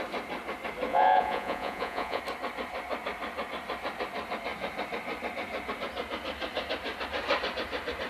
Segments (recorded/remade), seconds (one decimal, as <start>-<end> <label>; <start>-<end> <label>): 0.0-0.9 recorded; 0.9-2.2 remade; 2.2-8.1 recorded